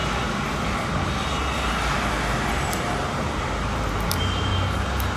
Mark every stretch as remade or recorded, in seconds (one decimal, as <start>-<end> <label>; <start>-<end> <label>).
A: 0.0-2.5 recorded; 2.5-4.5 remade; 4.5-5.2 recorded